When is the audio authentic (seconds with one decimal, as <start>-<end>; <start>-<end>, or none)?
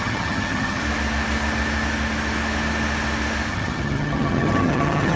0.8-3.5